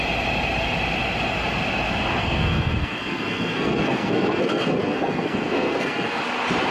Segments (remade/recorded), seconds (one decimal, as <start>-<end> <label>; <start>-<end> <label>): 0.0-2.2 recorded; 2.2-6.2 remade; 6.2-6.7 recorded